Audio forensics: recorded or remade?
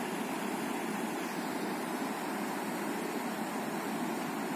remade